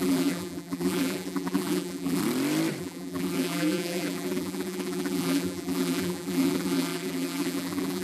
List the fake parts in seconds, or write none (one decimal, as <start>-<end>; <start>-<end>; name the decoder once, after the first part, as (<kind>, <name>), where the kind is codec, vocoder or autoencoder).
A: 0.0-2.2 (vocoder, BigVGAN v2); 2.8-8.0